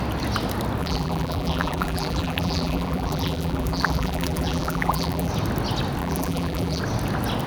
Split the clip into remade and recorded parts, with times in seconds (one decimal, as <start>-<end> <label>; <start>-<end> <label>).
0.0-0.8 recorded; 0.8-5.3 remade; 5.3-6.0 recorded; 6.0-6.8 remade; 6.8-7.5 recorded